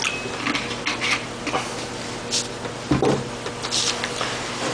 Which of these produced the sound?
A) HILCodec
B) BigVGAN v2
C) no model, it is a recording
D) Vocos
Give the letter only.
C